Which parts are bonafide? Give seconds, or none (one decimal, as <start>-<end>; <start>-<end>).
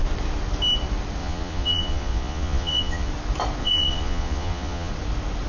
0.0-1.2; 3.1-3.6; 4.9-5.5